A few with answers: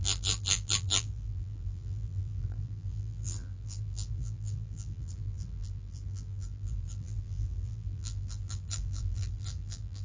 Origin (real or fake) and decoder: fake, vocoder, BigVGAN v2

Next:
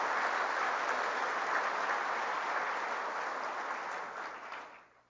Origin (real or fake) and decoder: real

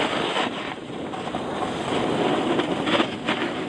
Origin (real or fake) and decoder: real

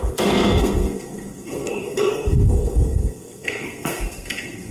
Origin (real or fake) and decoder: fake, codec, SNAC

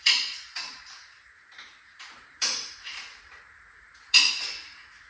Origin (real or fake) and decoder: fake, vocoder, Vocos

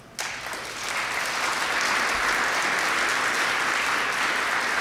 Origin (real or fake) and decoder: real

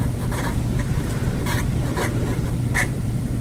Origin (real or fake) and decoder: fake, vocoder, BigVGAN v2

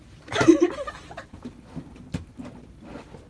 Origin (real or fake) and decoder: real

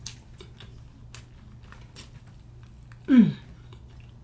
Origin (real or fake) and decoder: real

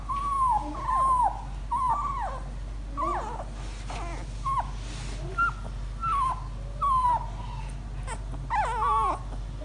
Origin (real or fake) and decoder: real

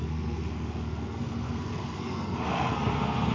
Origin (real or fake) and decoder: fake, codec, SNAC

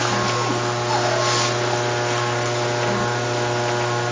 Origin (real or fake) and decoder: real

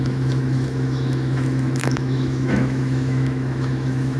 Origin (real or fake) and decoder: fake, autoencoder, DAC-VAE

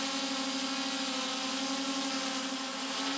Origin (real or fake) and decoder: real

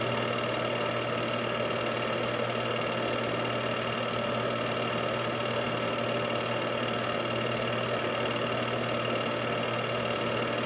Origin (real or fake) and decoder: real